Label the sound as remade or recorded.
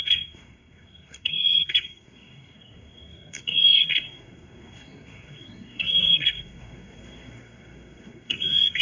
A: remade